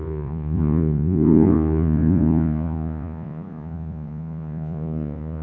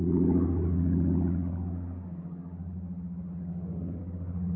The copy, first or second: first